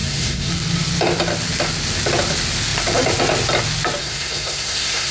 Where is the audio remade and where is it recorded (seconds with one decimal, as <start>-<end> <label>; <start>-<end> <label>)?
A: 0.0-0.5 remade; 0.5-4.0 recorded; 4.0-5.1 remade